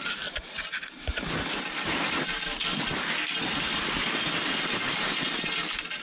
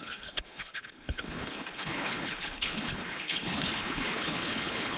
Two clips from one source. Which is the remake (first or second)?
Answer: second